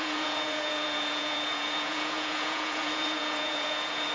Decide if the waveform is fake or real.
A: fake